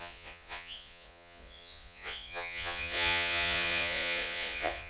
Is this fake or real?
fake